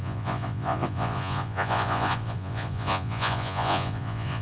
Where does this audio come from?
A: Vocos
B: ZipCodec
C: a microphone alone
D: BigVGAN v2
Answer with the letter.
A